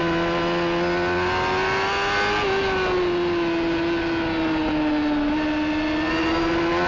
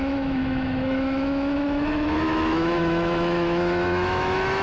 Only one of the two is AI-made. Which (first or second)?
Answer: second